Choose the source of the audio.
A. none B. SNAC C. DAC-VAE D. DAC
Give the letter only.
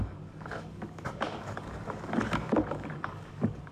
D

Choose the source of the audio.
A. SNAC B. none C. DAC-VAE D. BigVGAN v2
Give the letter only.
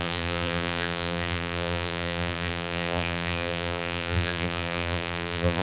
D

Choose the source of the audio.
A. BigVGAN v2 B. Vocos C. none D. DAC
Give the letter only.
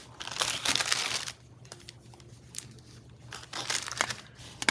C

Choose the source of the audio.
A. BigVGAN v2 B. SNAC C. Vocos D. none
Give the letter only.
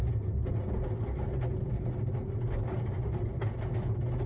D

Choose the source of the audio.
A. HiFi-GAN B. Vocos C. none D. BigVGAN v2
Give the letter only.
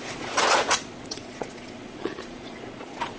B